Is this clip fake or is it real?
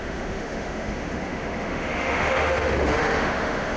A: fake